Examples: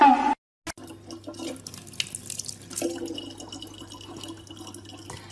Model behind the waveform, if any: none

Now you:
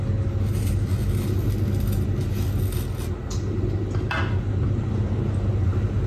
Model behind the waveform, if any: none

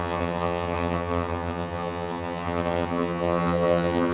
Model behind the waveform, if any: vocoder, HiFi-GAN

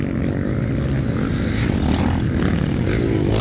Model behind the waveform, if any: none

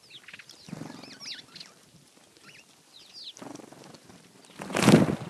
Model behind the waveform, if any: none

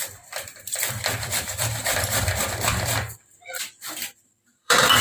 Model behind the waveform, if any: vocoder, BigVGAN v2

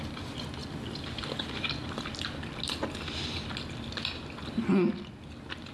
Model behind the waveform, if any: none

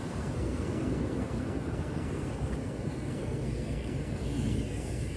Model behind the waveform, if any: codec, SNAC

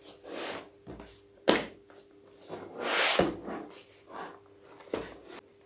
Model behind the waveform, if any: none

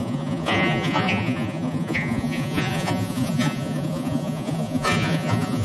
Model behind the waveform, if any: vocoder, Vocos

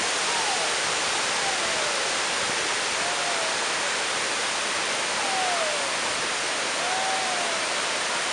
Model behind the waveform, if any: none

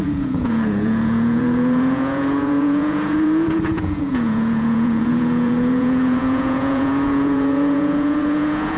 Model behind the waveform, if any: vocoder, Vocos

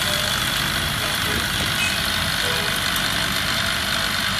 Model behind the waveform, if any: none